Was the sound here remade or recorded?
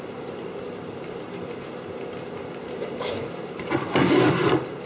remade